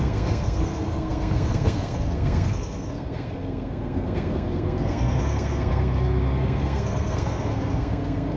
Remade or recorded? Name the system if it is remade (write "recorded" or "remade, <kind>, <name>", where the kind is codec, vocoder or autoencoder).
remade, codec, SNAC